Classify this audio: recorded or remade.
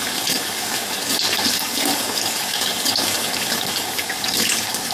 remade